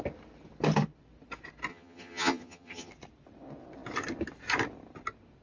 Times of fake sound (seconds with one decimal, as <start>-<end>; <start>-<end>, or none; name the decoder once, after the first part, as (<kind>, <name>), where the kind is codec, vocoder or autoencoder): 1.7-2.9 (vocoder, HiFi-GAN)